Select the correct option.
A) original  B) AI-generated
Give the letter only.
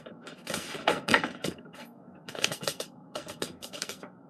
B